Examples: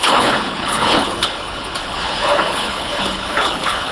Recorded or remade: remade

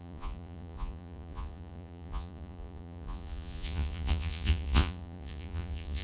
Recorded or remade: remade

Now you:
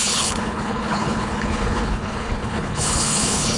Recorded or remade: remade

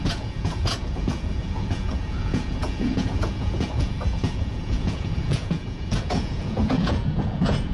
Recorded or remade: remade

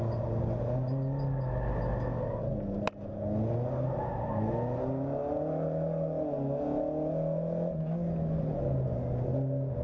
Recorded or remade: recorded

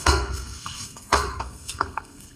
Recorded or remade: remade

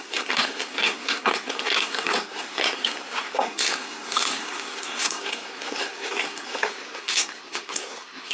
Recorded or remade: remade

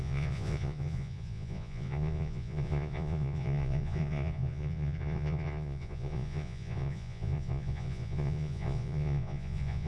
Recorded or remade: remade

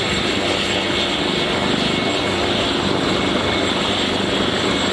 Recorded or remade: recorded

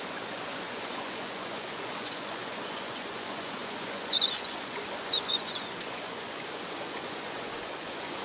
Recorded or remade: remade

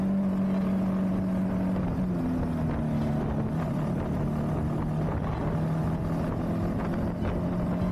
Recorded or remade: recorded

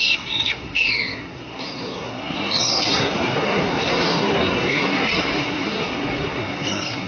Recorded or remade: remade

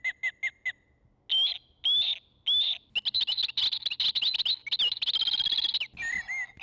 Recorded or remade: recorded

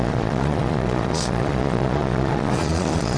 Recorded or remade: remade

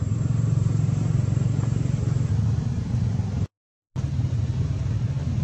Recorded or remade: remade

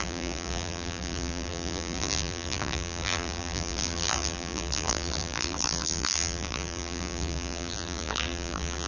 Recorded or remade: remade